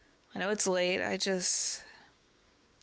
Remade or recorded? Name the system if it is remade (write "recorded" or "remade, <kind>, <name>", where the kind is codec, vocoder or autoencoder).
remade, codec, DAC